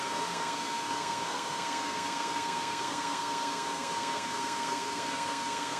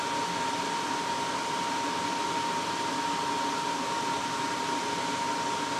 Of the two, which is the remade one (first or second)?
first